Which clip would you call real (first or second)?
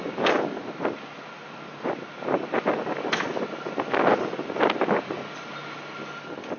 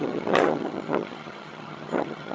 first